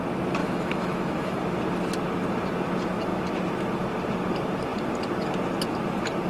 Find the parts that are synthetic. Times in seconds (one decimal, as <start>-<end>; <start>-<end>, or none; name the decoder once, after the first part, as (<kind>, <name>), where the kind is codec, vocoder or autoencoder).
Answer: 0.4-1.4 (autoencoder, DAC-VAE)